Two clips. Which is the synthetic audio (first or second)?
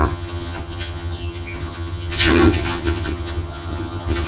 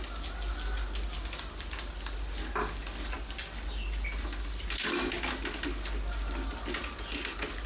first